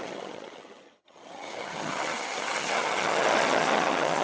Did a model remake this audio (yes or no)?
yes